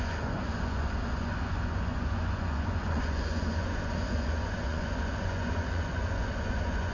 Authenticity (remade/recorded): remade